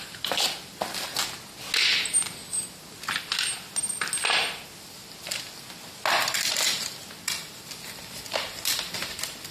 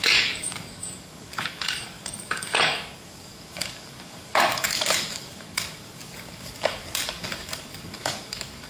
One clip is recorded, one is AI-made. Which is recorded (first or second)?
first